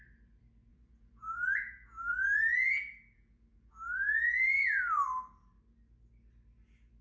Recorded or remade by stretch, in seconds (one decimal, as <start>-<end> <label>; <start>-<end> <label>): 0.0-0.7 recorded; 0.7-4.8 remade; 4.8-7.0 recorded